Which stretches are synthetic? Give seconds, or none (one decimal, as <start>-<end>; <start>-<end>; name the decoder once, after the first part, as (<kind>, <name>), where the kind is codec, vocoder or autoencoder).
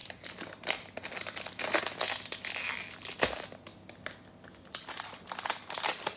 0.0-1.8 (vocoder, BigVGAN v2)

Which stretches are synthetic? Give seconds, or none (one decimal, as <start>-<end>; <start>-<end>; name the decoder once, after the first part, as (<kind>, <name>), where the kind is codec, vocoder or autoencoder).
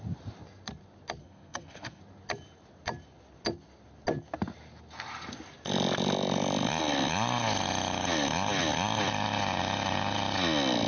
1.2-2.0 (codec, SNAC)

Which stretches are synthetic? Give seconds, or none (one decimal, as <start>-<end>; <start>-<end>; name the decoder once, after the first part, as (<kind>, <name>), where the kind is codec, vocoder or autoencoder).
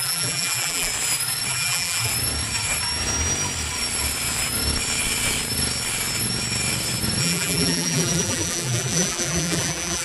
0.0-0.9 (vocoder, BigVGAN v2); 1.5-2.1; 7.2-10.0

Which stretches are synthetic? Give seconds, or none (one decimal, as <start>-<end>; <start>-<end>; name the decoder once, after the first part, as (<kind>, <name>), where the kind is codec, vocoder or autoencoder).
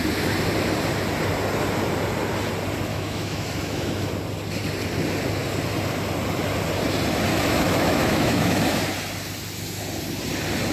2.9-4.1 (autoencoder, DAC-VAE); 7.3-8.8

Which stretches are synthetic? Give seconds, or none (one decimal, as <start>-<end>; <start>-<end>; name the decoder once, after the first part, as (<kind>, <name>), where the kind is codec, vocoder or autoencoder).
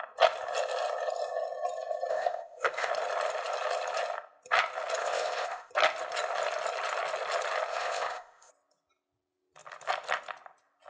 2.1-2.9 (codec, ZipCodec); 5.0-5.7; 7.7-8.5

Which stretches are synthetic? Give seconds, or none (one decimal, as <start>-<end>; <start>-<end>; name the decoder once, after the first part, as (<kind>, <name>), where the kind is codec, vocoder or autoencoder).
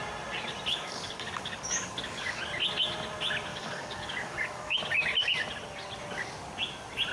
0.7-2.4 (codec, DAC); 3.5-4.8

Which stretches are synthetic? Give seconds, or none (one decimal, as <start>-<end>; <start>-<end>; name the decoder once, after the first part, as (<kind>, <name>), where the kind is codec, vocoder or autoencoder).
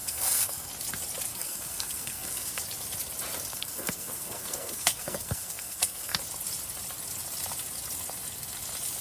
0.0-0.7 (codec, SNAC); 1.3-2.6; 3.5-6.2